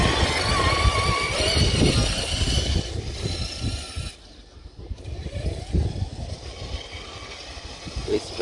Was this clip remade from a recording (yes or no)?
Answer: no